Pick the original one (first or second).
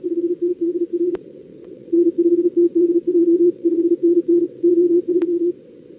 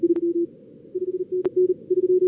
second